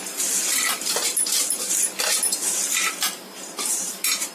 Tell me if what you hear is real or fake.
fake